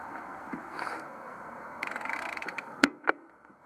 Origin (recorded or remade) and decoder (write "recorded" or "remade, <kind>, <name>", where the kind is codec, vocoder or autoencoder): remade, codec, SNAC